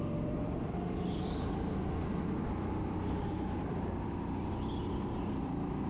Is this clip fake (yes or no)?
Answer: no